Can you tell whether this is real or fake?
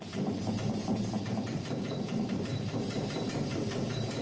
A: fake